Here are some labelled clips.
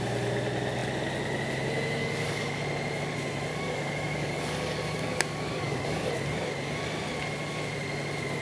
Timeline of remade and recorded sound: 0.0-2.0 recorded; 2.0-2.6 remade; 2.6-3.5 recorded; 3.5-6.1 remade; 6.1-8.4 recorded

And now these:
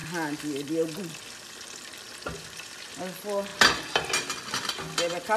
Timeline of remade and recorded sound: 0.0-5.4 recorded

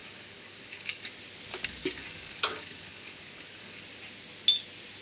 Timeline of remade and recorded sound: 0.0-1.1 remade; 1.1-1.8 recorded; 1.8-3.8 remade; 3.8-5.0 recorded

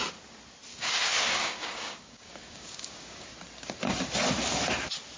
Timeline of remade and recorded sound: 0.0-0.7 recorded; 0.7-3.3 remade; 3.3-5.2 recorded

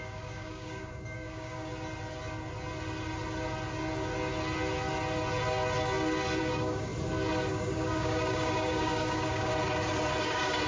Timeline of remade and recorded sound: 0.0-1.7 remade; 1.7-6.4 recorded; 6.4-6.9 remade; 6.9-7.5 recorded; 7.5-9.5 remade; 9.5-10.2 recorded; 10.2-10.7 remade

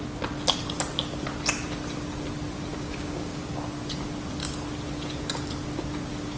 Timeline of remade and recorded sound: 0.0-2.7 recorded; 2.7-3.5 remade; 3.5-6.4 recorded